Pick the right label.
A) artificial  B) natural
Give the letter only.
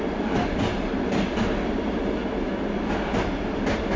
B